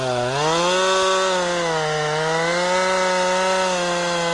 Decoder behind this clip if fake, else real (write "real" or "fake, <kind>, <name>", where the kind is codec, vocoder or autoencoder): real